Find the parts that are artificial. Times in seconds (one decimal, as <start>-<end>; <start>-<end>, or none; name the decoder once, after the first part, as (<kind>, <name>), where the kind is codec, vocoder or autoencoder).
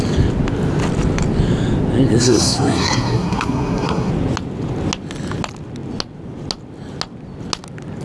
2.2-4.1 (codec, SNAC)